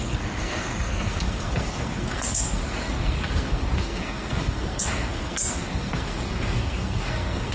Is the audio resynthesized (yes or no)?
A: yes